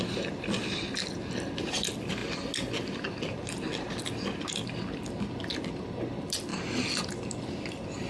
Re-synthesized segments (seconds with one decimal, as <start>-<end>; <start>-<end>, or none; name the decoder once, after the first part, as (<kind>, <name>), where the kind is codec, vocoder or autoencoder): none